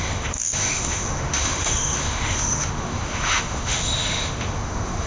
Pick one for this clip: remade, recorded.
remade